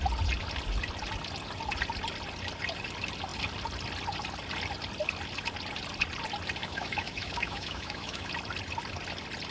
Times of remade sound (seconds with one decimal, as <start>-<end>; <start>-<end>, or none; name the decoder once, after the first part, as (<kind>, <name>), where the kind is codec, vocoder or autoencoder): 6.6-8.3 (autoencoder, DAC-VAE)